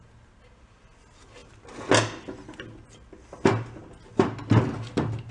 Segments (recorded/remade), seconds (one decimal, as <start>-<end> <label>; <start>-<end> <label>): 0.0-5.3 recorded